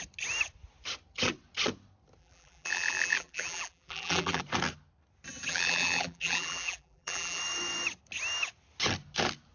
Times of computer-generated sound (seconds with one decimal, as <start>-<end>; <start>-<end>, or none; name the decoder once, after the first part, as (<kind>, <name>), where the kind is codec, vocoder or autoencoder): 2.2-4.4 (vocoder, BigVGAN v2); 5.5-7.4